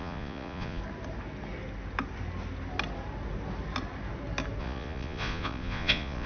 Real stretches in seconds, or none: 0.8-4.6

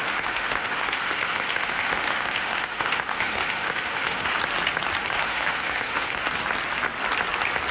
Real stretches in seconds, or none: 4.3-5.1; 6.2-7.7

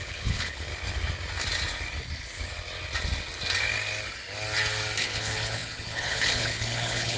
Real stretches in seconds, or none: 0.7-5.0